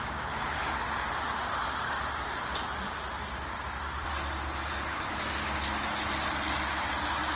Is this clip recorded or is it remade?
recorded